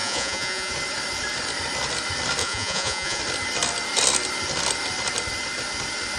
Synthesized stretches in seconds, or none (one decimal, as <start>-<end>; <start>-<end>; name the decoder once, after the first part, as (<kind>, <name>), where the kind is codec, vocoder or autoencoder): 0.0-0.7 (vocoder, Vocos); 2.4-3.2